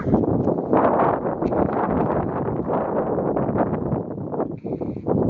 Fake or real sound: real